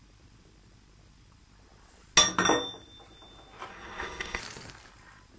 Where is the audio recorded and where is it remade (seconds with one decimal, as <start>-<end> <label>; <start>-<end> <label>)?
0.0-3.7 recorded; 3.7-4.4 remade; 4.4-5.4 recorded